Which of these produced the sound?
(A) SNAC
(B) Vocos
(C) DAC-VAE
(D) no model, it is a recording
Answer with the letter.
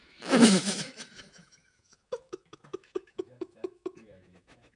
C